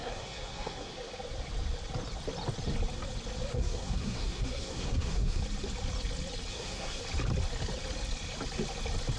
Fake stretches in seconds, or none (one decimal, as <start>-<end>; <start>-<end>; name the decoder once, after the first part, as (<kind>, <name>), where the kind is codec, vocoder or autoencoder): 0.0-0.9 (codec, SNAC); 3.5-5.4; 6.5-7.0